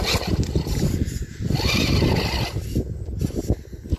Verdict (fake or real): real